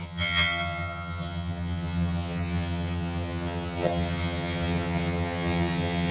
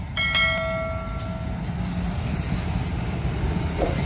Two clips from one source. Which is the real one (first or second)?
second